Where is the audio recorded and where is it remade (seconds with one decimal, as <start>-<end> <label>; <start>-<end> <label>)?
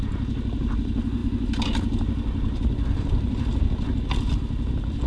0.0-5.1 recorded